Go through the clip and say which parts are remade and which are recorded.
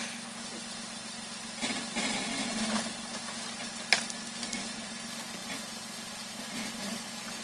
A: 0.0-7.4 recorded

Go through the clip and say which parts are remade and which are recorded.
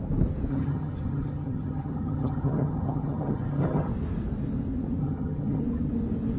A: 0.0-0.5 recorded; 0.5-3.9 remade; 3.9-5.0 recorded; 5.0-5.6 remade; 5.6-6.4 recorded